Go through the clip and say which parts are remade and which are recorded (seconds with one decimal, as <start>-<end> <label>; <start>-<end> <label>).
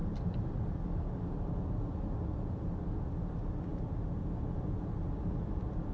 0.0-5.9 recorded